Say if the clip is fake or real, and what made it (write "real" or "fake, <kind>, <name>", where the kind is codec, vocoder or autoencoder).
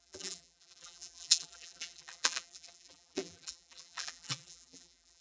fake, vocoder, BigVGAN v2